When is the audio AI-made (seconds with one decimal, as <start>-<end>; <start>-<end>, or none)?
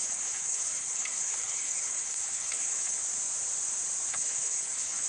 0.0-3.0; 4.1-5.1